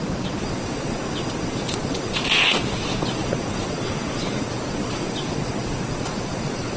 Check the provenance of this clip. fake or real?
fake